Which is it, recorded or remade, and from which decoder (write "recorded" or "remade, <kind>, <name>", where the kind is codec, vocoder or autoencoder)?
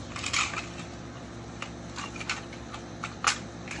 remade, vocoder, BigVGAN v2